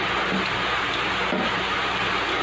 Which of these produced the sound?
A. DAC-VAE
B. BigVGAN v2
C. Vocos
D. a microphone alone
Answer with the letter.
D